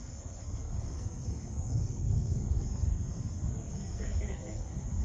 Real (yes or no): no